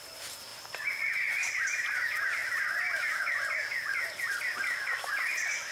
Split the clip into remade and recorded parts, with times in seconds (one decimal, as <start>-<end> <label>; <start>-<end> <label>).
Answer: 0.0-5.7 recorded